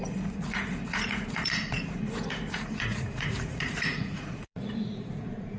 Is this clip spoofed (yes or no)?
yes